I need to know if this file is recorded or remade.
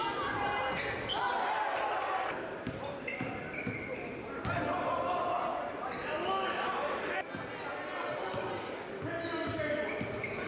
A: recorded